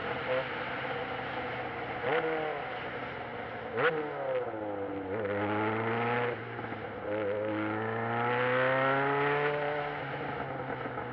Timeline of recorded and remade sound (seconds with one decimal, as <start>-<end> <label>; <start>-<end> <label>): 0.0-11.1 recorded